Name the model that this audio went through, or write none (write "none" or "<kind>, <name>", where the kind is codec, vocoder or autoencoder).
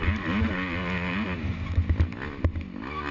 none